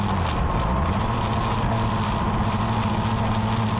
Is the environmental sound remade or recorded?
recorded